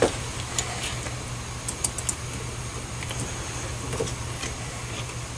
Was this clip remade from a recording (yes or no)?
no